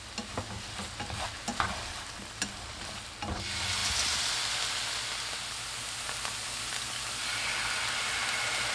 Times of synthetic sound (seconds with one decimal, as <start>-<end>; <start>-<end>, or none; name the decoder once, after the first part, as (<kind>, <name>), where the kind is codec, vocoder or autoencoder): none